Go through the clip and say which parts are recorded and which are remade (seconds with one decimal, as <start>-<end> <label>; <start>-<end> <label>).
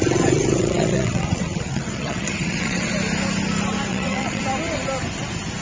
0.0-2.9 remade; 2.9-3.9 recorded; 3.9-4.4 remade; 4.4-5.6 recorded